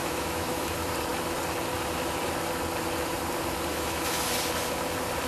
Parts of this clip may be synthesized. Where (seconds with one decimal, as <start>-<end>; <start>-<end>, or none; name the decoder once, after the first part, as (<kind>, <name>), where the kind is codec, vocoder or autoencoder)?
0.0-0.7 (autoencoder, DAC-VAE); 3.7-4.2